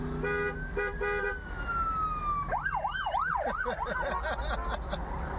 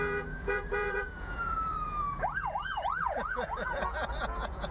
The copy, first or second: second